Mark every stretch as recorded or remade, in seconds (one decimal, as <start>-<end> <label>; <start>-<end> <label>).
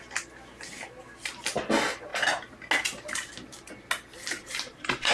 0.0-4.4 recorded; 4.4-5.1 remade